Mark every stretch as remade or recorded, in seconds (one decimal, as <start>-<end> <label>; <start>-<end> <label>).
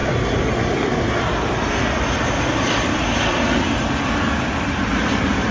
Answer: 0.0-5.5 recorded